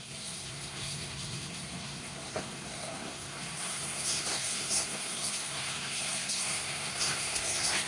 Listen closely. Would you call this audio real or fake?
fake